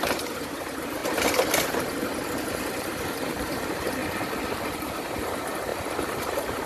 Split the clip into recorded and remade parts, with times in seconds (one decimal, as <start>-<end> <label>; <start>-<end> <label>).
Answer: 0.0-1.0 remade; 1.0-2.7 recorded; 2.7-4.0 remade; 4.0-4.5 recorded; 4.5-6.7 remade

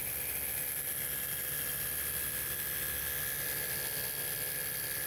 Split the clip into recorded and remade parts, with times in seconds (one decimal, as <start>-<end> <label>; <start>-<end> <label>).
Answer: 0.0-5.1 recorded

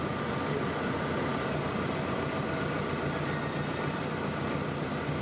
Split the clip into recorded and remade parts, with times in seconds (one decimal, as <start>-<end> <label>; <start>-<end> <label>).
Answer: 0.0-5.2 remade

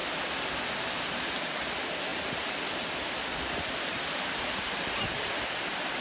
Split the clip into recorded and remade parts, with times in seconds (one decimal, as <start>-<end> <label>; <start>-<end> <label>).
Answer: 0.0-6.0 recorded

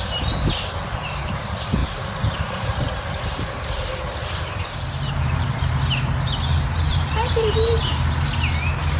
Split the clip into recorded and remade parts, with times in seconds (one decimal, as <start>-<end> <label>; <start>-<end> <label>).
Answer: 0.0-1.8 recorded; 1.8-5.7 remade; 5.7-6.9 recorded; 6.9-7.8 remade; 7.8-9.0 recorded

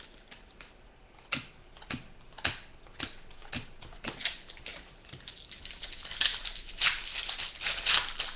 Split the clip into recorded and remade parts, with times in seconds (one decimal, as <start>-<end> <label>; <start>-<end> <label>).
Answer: 0.0-4.7 recorded; 4.7-5.8 remade; 5.8-8.4 recorded

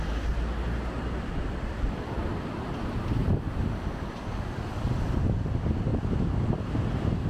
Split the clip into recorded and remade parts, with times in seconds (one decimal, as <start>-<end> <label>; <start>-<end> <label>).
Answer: 0.0-3.2 recorded; 3.2-4.4 remade; 4.4-5.9 recorded; 5.9-7.3 remade

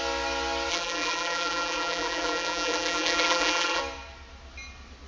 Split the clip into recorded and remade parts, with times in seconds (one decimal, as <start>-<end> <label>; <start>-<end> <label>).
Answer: 0.0-0.7 recorded; 0.7-3.8 remade; 3.8-5.1 recorded